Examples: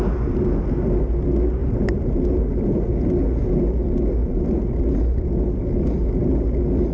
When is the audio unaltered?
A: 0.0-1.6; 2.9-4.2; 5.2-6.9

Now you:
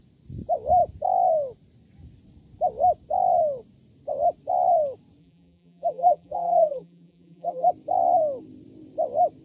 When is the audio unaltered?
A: 0.0-5.2; 7.7-9.4

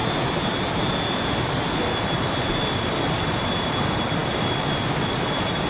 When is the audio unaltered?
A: 0.0-5.7

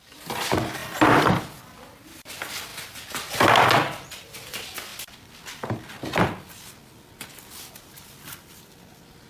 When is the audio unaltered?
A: 0.0-0.8; 1.4-9.3

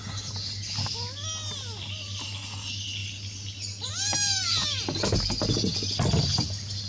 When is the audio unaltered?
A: 0.0-6.9

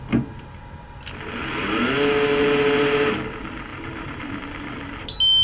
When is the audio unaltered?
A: 0.0-2.3; 3.1-3.7; 4.4-5.4

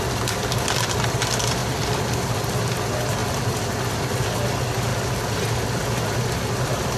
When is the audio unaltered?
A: 0.0-1.6; 2.3-3.2; 4.2-7.0

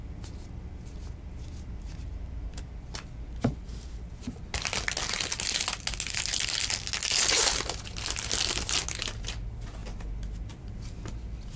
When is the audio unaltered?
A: 0.0-3.5; 4.4-11.6